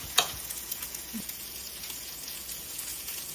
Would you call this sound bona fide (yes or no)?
no